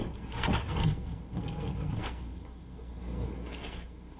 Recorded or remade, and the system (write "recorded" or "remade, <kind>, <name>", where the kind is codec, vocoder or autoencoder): remade, codec, SNAC